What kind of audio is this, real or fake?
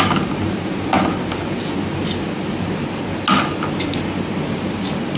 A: real